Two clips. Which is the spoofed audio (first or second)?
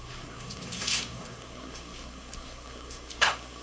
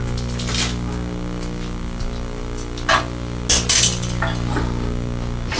first